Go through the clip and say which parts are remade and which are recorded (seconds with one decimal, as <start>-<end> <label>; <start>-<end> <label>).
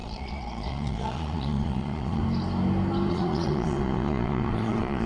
0.0-2.2 remade; 2.2-3.1 recorded; 3.1-5.1 remade